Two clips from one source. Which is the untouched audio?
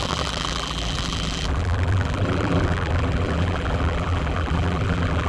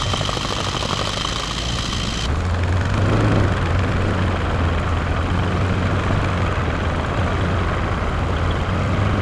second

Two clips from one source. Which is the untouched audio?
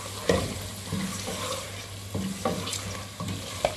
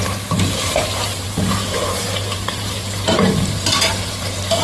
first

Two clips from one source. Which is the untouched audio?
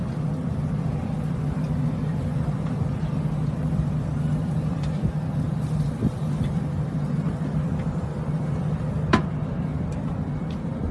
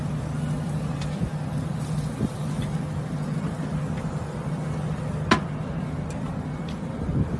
second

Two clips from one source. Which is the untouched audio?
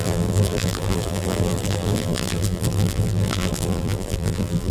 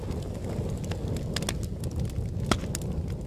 second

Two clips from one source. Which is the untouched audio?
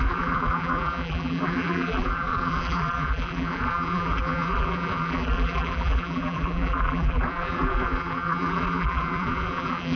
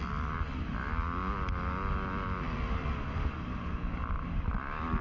second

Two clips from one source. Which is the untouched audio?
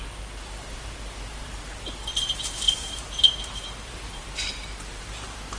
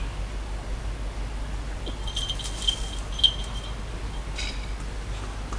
second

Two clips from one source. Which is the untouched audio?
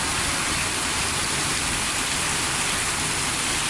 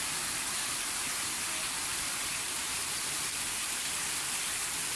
first